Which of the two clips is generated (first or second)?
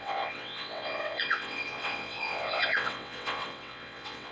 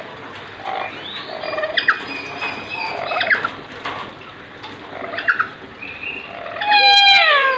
first